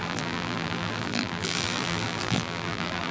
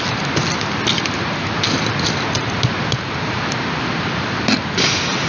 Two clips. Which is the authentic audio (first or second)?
second